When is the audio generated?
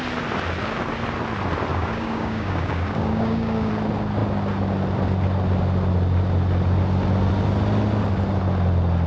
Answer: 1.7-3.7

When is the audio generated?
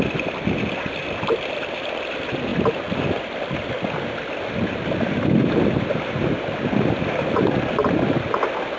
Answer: none